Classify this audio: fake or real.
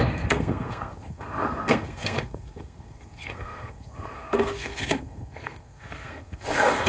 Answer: fake